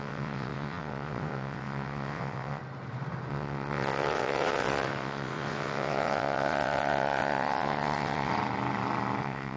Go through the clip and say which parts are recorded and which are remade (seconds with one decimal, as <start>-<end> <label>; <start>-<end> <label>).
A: 0.0-2.6 remade; 2.6-3.3 recorded; 3.3-8.3 remade; 8.3-9.2 recorded; 9.2-9.6 remade